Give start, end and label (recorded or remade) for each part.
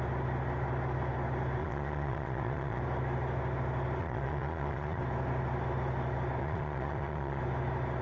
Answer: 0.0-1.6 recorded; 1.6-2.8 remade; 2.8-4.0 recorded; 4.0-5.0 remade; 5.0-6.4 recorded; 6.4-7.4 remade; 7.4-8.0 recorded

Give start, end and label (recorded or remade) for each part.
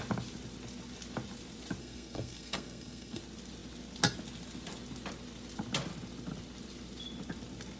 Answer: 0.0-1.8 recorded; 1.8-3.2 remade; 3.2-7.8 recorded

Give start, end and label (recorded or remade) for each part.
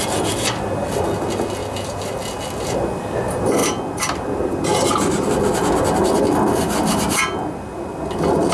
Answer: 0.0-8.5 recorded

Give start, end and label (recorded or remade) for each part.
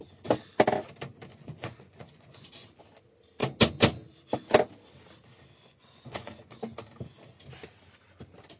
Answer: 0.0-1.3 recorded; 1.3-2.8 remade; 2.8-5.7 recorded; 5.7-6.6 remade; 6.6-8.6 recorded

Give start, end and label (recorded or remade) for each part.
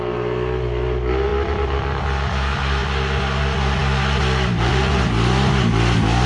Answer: 0.0-6.3 recorded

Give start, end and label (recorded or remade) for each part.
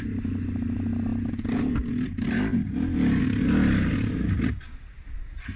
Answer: 0.0-5.6 recorded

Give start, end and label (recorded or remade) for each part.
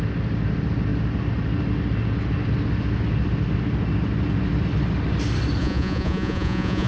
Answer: 0.0-5.6 recorded; 5.6-6.9 remade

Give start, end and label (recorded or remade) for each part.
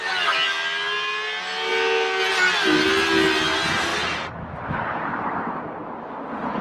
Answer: 0.0-6.6 recorded